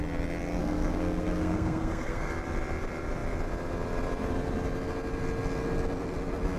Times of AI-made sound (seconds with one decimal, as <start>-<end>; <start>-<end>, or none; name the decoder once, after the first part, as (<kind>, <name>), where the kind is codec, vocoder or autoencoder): 0.6-2.3 (codec, SNAC)